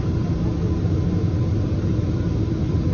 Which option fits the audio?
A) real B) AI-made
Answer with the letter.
A